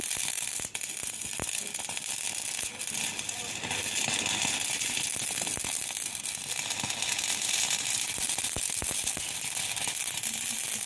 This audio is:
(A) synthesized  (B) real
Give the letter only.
B